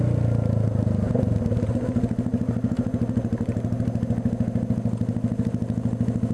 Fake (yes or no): no